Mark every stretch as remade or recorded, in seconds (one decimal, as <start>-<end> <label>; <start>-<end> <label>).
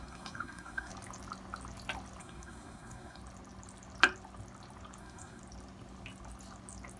0.0-0.9 remade; 0.9-2.2 recorded; 2.2-3.2 remade; 3.2-5.0 recorded; 5.0-5.4 remade; 5.4-7.0 recorded